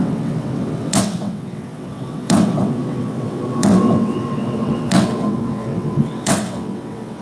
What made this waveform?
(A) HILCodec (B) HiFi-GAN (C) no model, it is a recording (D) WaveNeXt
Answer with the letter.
D